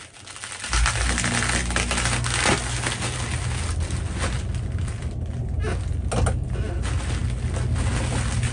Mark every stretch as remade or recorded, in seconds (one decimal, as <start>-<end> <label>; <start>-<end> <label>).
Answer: 0.0-8.5 recorded